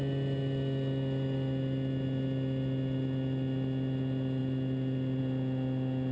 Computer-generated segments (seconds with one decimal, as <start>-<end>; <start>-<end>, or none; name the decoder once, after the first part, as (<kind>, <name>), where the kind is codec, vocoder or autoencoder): none